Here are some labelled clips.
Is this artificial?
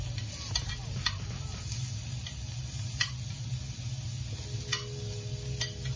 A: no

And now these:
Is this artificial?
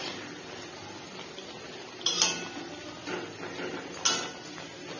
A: no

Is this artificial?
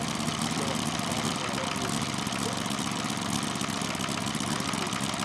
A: no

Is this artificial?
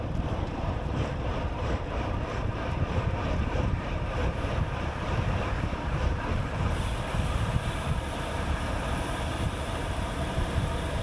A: yes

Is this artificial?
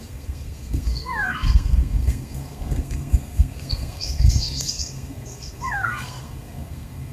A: yes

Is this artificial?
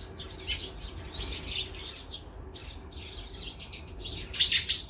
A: no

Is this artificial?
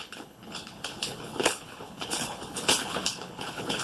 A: yes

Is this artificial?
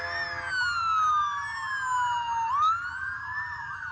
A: no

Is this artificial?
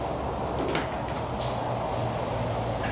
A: no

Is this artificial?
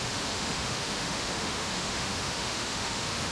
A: yes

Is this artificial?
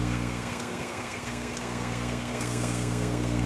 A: yes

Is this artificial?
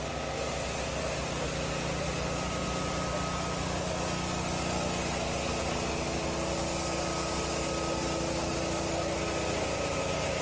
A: no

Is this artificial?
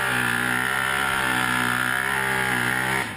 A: no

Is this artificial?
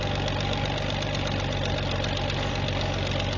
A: no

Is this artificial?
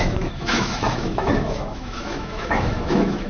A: yes